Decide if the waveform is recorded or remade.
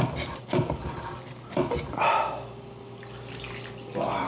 recorded